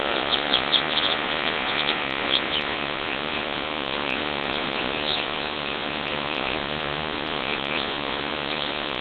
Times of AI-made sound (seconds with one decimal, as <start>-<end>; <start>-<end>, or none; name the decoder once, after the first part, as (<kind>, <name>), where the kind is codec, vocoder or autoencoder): 0.0-9.0 (vocoder, Vocos)